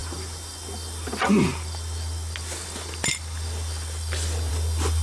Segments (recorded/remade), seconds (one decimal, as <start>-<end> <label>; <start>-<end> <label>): 0.0-5.0 recorded

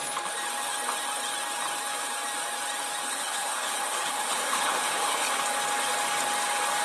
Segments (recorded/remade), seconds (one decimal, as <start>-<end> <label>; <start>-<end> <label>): 0.0-3.1 recorded; 3.1-5.4 remade; 5.4-6.8 recorded

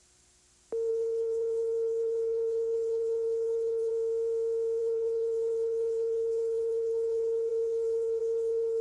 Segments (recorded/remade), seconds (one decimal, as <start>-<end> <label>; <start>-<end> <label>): 0.0-0.9 recorded; 0.9-3.9 remade; 3.9-4.8 recorded; 4.8-8.8 remade

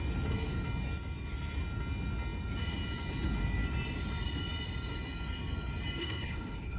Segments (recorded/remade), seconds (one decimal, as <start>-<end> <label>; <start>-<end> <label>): 0.0-6.0 recorded; 6.0-6.8 remade

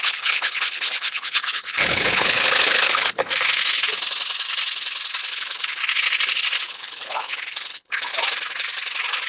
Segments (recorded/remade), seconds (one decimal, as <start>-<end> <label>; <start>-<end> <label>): 0.0-3.2 remade; 3.2-5.3 recorded; 5.3-5.8 remade; 5.8-6.7 recorded; 6.7-8.1 remade; 8.1-9.3 recorded

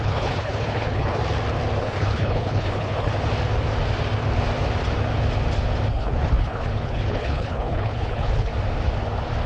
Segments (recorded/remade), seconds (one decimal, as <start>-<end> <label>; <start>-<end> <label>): 0.0-1.2 remade; 1.2-1.8 recorded; 1.8-3.1 remade; 3.1-5.9 recorded; 5.9-8.5 remade; 8.5-9.5 recorded

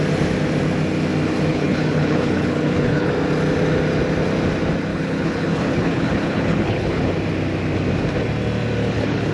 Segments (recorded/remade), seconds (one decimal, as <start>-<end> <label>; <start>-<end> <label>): 0.0-1.5 recorded; 1.5-3.1 remade; 3.1-4.9 recorded; 4.9-7.1 remade; 7.1-8.8 recorded; 8.8-9.3 remade

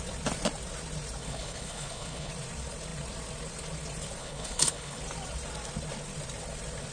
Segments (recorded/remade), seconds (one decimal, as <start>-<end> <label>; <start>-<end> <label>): 0.0-1.2 recorded; 1.2-2.3 remade; 2.3-4.2 recorded; 4.2-5.0 remade; 5.0-6.9 recorded